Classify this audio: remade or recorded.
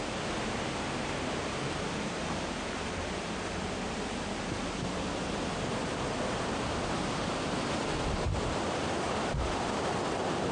recorded